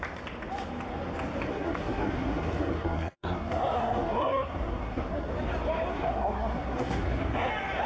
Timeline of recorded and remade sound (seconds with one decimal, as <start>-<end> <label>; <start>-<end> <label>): 0.0-1.5 recorded; 1.5-5.3 remade; 5.3-5.9 recorded; 5.9-7.5 remade; 7.5-7.9 recorded